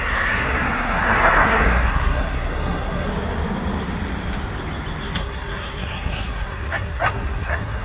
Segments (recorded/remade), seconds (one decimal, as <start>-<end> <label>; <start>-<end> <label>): 0.0-3.1 remade; 3.1-5.0 recorded; 5.0-7.8 remade

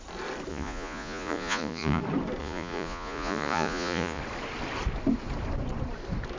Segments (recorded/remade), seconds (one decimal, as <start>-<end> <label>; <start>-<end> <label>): 0.0-0.5 recorded; 0.5-2.0 remade; 2.0-2.4 recorded; 2.4-4.2 remade; 4.2-6.4 recorded

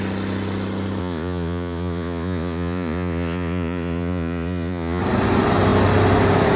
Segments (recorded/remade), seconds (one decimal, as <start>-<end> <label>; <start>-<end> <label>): 0.0-1.0 recorded; 1.0-5.0 remade; 5.0-6.6 recorded